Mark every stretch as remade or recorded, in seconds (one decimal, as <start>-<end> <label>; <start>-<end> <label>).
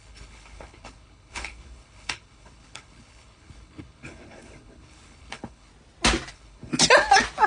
0.0-5.7 remade; 5.7-6.3 recorded; 6.3-6.7 remade; 6.7-7.5 recorded